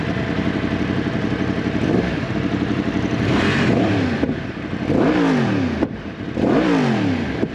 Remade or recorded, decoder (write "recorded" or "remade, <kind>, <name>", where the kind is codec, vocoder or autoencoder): remade, vocoder, BigVGAN v2